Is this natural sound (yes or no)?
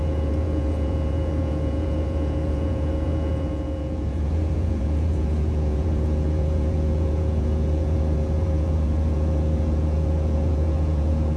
no